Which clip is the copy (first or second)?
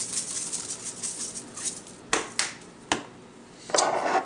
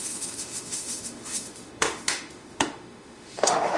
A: second